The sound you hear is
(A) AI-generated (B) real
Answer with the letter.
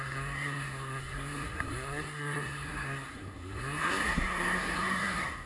A